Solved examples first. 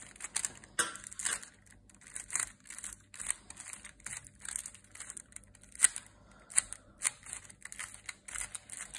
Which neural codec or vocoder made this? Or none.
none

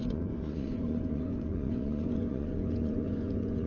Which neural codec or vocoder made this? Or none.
vocoder, Vocos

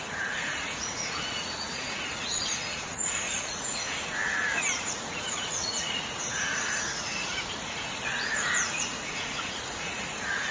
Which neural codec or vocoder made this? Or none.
vocoder, Vocos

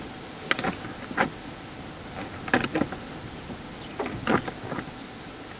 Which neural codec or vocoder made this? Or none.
none